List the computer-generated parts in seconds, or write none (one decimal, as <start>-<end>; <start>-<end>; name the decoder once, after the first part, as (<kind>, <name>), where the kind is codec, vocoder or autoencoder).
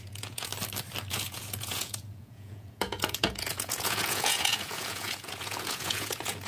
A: 0.0-0.5 (vocoder, Vocos); 1.1-6.5